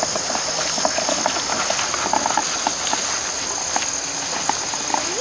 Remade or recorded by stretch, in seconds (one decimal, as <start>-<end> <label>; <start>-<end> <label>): 0.0-5.2 recorded